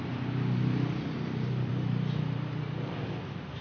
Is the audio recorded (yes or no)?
yes